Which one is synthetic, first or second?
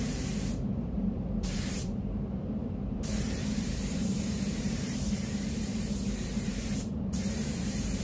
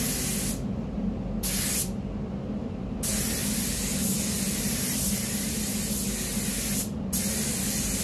first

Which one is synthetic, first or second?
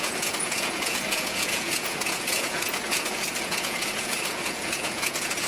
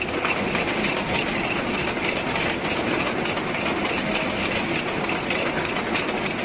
first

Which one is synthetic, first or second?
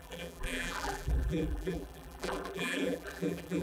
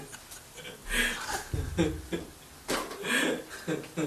first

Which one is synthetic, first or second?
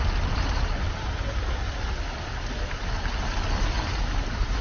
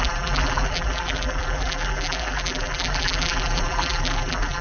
second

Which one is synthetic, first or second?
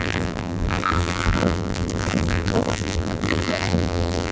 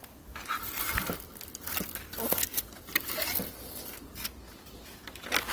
first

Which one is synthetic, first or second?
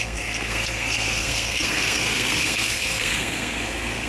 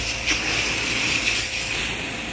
first